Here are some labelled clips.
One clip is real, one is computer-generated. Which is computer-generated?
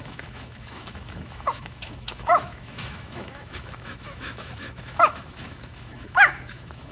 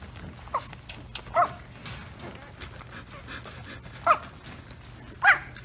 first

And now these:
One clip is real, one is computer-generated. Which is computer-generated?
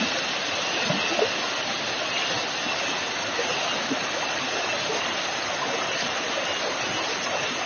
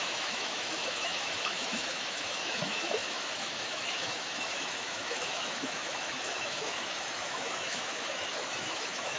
second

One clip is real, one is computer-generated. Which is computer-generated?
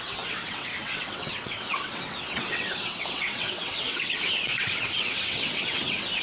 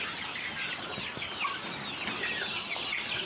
first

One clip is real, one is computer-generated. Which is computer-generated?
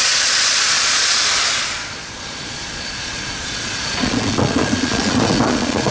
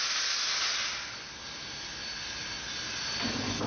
first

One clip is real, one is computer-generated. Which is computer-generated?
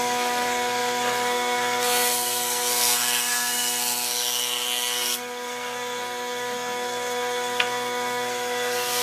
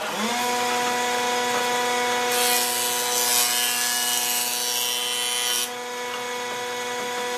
first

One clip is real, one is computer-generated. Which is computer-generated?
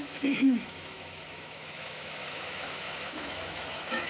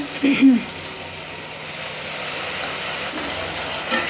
first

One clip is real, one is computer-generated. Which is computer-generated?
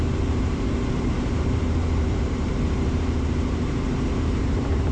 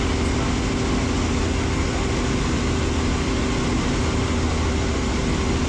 first